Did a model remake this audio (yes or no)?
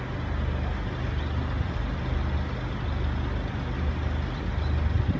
no